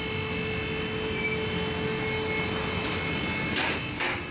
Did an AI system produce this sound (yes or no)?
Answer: no